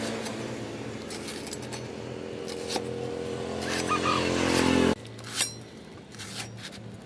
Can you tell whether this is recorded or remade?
recorded